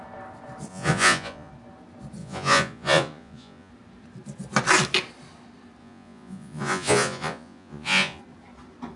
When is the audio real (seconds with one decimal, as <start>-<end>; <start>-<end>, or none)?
0.0-0.7; 1.5-2.2; 3.7-5.8; 8.2-9.0

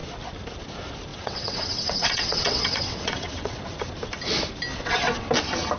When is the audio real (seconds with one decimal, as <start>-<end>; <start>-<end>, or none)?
0.0-1.1; 3.7-4.7; 5.3-5.8